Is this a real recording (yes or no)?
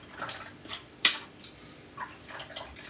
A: yes